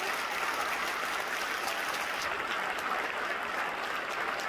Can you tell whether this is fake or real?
real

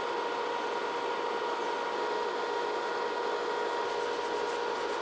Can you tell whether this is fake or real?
real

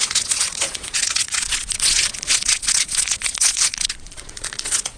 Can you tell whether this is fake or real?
fake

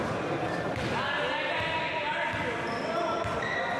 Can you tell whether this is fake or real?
real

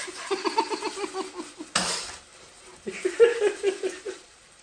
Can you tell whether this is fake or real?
real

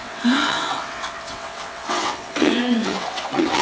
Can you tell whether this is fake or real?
fake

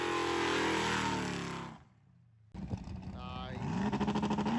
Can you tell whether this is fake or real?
real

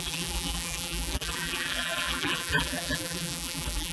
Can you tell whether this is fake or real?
fake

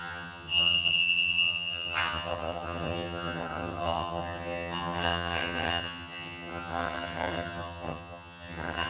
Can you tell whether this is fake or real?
fake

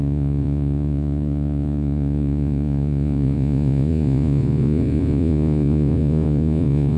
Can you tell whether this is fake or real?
fake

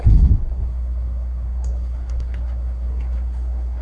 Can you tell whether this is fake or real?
fake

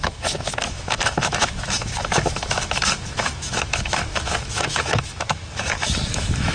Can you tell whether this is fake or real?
fake